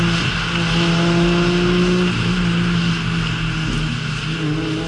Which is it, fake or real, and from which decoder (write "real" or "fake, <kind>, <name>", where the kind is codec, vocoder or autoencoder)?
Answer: real